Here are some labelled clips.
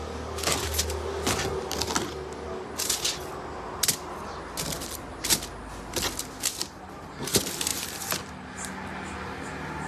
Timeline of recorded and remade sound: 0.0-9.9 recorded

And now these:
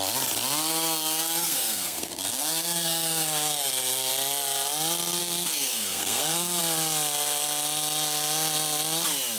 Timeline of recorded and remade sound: 0.0-0.7 recorded; 0.7-4.1 remade; 4.1-5.2 recorded; 5.2-6.6 remade; 6.6-9.4 recorded

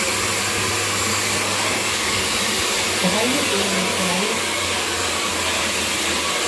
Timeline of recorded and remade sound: 0.0-1.1 recorded; 1.1-2.4 remade; 2.4-3.9 recorded; 3.9-5.1 remade; 5.1-6.5 recorded

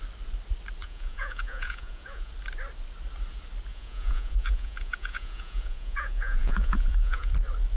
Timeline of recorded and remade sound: 0.0-0.8 recorded; 0.8-2.3 remade; 2.3-3.7 recorded; 3.7-7.3 remade; 7.3-7.8 recorded

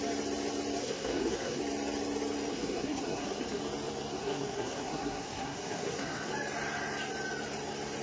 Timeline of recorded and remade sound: 0.0-0.8 recorded; 0.8-1.6 remade; 1.6-2.5 recorded; 2.5-3.6 remade; 3.6-4.2 recorded; 4.2-6.3 remade; 6.3-8.0 recorded